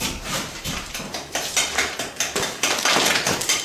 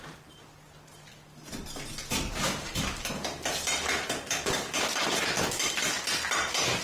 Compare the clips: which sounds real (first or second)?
second